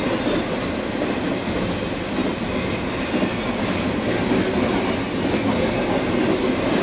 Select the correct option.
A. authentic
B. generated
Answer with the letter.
A